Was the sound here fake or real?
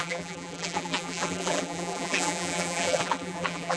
fake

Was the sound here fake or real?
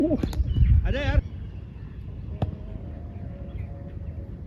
real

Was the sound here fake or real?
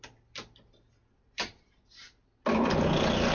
real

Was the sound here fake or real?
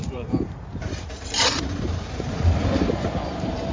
fake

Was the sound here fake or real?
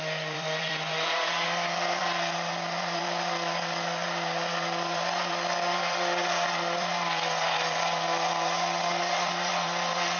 fake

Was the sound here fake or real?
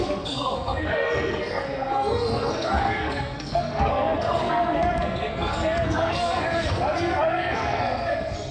fake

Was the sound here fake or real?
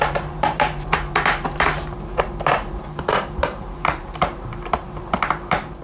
fake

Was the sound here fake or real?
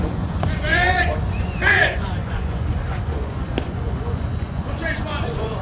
fake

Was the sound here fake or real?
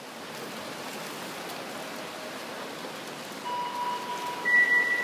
real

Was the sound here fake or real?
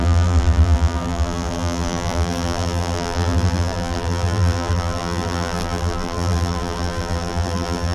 fake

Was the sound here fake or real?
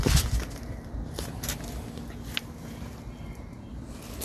real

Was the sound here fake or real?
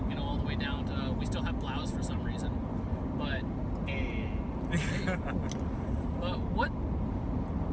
real